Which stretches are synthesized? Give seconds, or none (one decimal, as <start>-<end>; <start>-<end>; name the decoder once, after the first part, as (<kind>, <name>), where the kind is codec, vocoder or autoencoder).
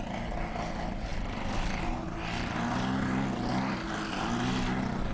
none